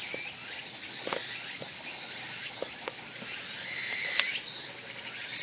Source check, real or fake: real